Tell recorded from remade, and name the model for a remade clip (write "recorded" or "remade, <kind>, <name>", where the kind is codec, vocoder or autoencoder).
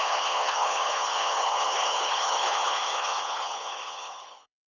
remade, codec, HILCodec